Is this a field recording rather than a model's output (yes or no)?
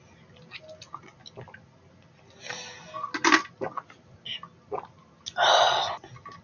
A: yes